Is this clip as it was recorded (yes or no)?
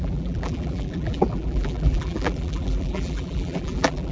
no